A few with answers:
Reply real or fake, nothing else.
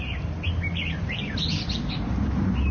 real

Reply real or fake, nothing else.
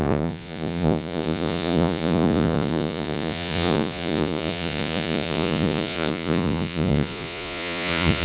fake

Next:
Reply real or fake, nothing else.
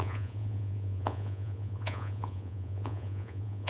fake